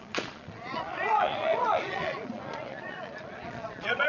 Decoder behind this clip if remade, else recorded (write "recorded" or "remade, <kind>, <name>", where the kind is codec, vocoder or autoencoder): remade, vocoder, Vocos